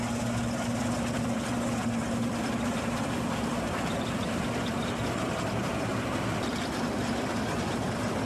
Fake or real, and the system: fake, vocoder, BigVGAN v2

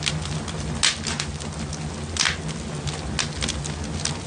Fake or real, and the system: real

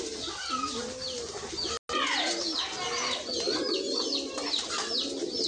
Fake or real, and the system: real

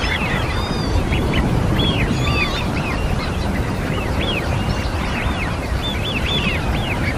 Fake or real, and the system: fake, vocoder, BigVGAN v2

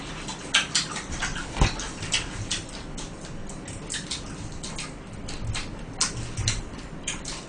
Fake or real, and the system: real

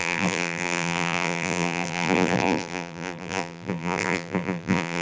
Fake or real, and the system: fake, vocoder, BigVGAN v2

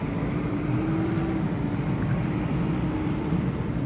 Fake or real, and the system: fake, vocoder, BigVGAN v2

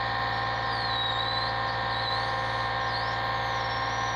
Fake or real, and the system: real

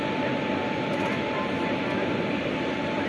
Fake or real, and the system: fake, vocoder, BigVGAN v2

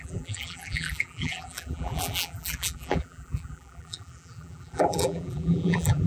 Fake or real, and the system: fake, vocoder, BigVGAN v2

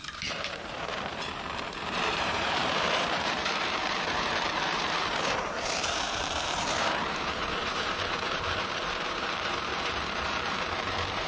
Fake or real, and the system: fake, vocoder, BigVGAN v2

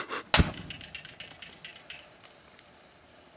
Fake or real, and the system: real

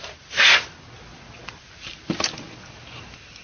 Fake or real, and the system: real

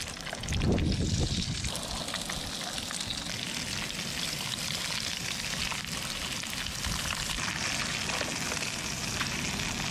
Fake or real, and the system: real